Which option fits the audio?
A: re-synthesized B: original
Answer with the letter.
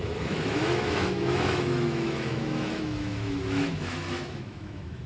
A